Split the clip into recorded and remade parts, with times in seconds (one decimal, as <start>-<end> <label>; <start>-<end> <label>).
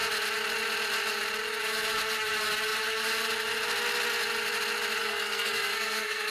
0.0-5.0 recorded; 5.0-6.3 remade